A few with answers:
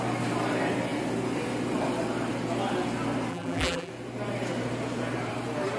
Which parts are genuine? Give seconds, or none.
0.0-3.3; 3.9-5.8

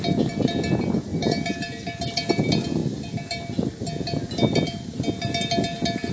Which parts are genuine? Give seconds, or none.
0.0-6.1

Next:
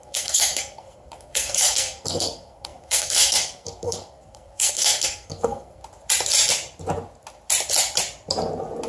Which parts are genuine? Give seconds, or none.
5.8-8.9

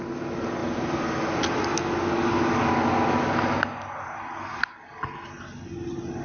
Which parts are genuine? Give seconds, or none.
0.0-0.6; 1.2-6.2

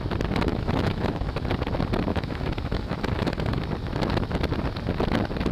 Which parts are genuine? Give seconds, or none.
0.0-0.5; 1.5-2.1; 3.6-5.5

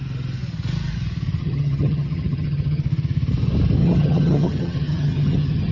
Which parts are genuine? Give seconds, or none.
0.0-1.4; 2.8-3.8